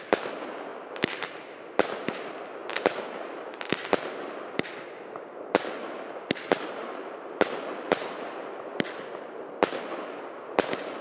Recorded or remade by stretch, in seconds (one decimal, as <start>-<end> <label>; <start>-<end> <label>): 0.0-11.0 recorded

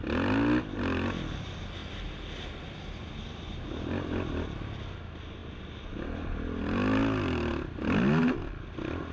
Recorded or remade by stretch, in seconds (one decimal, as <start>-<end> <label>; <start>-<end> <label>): 0.0-9.1 recorded

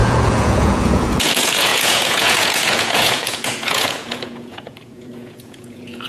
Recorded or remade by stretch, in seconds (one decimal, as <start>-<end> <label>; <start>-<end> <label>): 0.0-6.1 remade

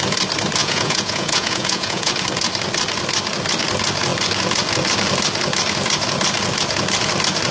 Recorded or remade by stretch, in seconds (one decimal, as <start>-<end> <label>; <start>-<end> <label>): 0.0-0.6 recorded; 0.6-2.1 remade; 2.1-7.5 recorded

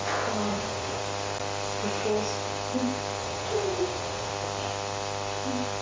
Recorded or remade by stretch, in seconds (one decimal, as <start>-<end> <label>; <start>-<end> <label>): 0.0-0.5 recorded; 0.5-1.0 remade; 1.0-3.2 recorded; 3.2-4.3 remade; 4.3-5.8 recorded

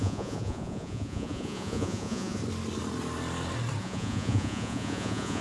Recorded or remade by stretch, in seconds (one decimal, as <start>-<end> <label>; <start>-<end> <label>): 0.0-2.4 remade; 2.4-3.8 recorded; 3.8-5.4 remade